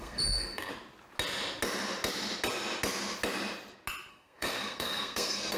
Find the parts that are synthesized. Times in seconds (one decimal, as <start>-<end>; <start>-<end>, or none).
0.0-0.7; 4.1-5.6